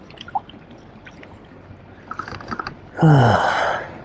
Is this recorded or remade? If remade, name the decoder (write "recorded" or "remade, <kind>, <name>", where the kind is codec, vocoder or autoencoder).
recorded